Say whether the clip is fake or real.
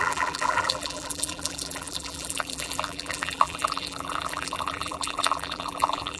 fake